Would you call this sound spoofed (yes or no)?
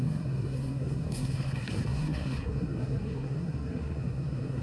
yes